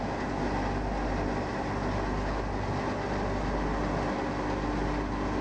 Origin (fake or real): real